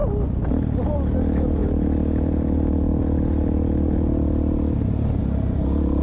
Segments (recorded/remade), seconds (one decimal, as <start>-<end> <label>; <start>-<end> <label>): 0.0-6.0 recorded